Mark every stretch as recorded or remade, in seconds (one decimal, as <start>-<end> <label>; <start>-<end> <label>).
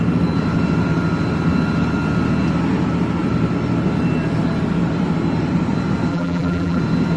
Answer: 0.0-6.1 recorded; 6.1-6.8 remade; 6.8-7.2 recorded